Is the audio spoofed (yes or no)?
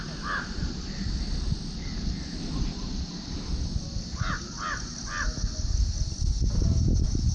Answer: no